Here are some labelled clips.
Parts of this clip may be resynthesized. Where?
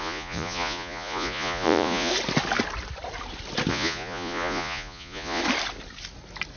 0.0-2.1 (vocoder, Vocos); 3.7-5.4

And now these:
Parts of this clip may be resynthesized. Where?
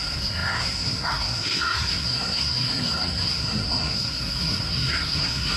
0.0-5.6 (codec, SNAC)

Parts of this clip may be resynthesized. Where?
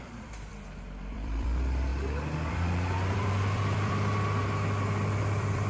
0.0-0.5 (vocoder, BigVGAN v2); 1.1-1.9; 2.5-4.4; 5.2-5.7